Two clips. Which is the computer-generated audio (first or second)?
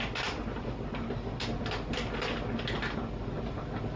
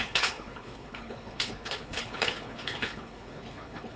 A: second